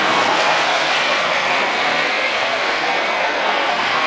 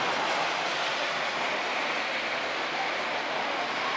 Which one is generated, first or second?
first